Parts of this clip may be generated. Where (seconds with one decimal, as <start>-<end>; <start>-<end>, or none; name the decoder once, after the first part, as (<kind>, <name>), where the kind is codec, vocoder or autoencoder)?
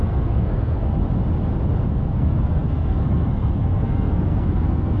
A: 0.0-1.0 (codec, SNAC); 1.9-5.0